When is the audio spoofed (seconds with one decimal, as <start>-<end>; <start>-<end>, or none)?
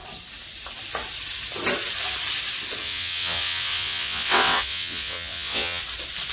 2.8-5.8